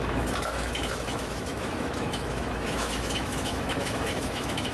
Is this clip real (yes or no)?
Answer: no